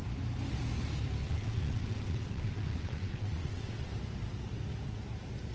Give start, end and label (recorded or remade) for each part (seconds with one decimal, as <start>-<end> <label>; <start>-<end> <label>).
0.0-1.2 recorded; 1.2-3.9 remade; 3.9-5.5 recorded